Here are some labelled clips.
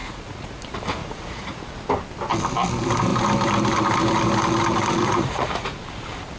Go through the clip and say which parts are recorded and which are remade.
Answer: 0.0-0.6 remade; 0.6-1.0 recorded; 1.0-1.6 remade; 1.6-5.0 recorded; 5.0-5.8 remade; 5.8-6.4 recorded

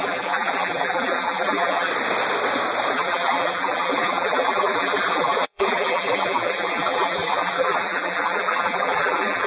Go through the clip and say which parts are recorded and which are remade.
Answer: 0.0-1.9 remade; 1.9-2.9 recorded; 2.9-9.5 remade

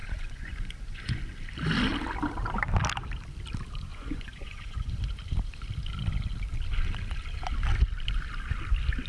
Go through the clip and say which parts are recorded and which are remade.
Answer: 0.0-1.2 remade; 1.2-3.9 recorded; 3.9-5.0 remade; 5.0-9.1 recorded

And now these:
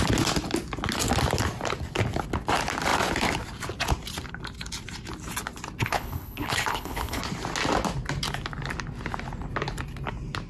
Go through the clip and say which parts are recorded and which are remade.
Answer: 0.0-5.8 recorded; 5.8-7.2 remade; 7.2-10.5 recorded